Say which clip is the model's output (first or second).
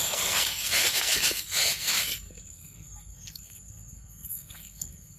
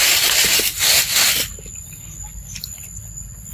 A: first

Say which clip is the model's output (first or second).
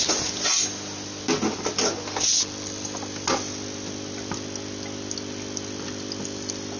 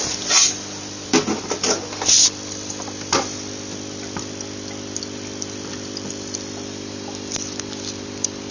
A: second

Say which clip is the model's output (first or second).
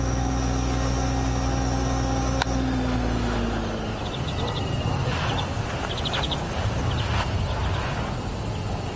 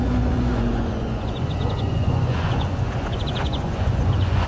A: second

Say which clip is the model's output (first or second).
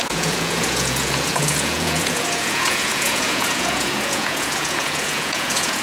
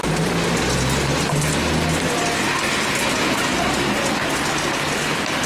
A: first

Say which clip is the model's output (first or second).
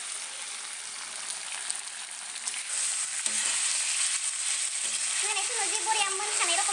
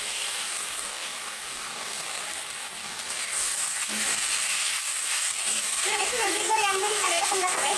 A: second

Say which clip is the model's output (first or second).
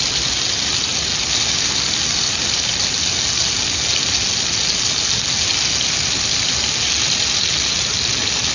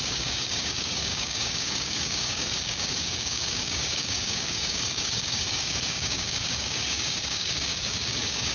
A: second